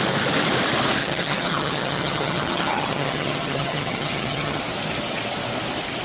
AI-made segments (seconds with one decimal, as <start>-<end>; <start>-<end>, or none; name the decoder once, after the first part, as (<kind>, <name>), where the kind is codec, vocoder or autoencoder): 1.0-4.6 (vocoder, HiFi-GAN)